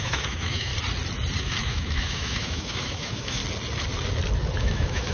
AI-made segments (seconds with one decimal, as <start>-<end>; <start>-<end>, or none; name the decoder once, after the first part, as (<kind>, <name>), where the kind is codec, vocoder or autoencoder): 0.0-0.7 (autoencoder, DAC-VAE); 1.4-3.4; 4.6-5.1